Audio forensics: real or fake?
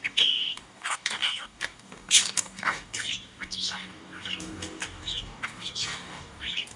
fake